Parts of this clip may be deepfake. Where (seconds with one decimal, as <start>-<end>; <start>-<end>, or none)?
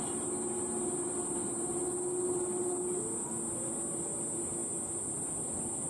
none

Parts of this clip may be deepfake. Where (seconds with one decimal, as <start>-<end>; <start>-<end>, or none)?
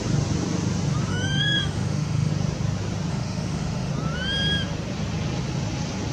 1.1-2.3; 3.1-3.9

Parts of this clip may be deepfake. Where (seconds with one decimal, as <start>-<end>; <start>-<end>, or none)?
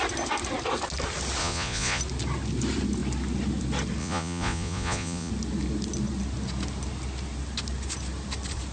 1.4-2.0; 4.0-5.3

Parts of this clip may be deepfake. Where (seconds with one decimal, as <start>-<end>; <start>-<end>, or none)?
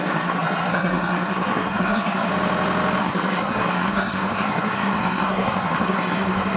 0.0-2.3; 3.0-6.6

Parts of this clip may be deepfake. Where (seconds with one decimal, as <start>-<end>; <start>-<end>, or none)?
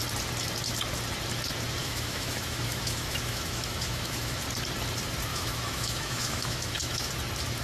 1.8-4.4; 5.3-7.1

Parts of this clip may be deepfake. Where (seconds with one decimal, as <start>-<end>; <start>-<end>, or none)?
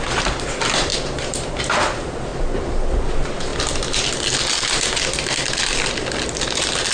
0.0-2.3; 3.1-3.5